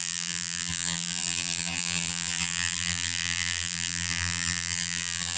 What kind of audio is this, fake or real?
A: fake